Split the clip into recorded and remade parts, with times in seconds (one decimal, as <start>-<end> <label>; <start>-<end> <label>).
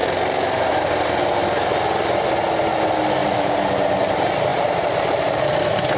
0.0-3.2 recorded; 3.2-3.7 remade; 3.7-4.5 recorded; 4.5-5.5 remade; 5.5-6.0 recorded